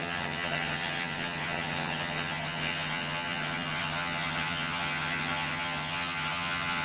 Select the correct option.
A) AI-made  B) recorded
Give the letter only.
A